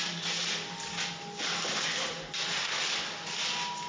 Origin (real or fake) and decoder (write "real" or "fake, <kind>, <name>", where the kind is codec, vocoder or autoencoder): real